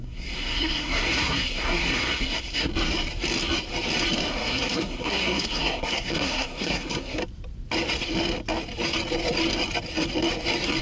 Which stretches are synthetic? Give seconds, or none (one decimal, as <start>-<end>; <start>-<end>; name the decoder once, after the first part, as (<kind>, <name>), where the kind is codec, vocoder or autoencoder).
0.0-2.7 (codec, SNAC); 4.3-7.2